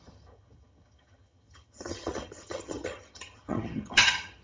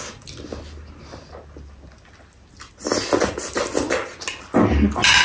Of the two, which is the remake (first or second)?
first